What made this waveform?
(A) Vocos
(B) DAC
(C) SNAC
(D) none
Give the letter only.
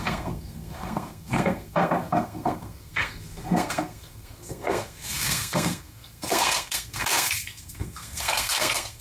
C